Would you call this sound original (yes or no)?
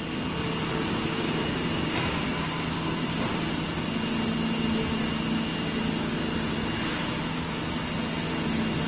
yes